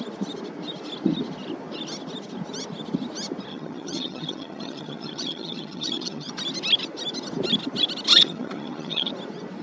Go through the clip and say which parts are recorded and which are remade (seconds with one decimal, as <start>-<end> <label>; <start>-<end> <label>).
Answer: 0.0-3.5 recorded; 3.5-6.3 remade; 6.3-8.1 recorded; 8.1-9.1 remade; 9.1-9.6 recorded